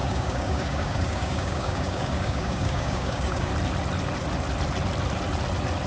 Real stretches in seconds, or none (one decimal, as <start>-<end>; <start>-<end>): 3.5-5.9